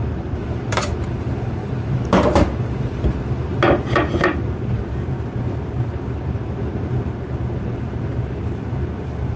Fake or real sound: fake